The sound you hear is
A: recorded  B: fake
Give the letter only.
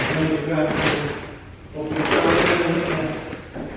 A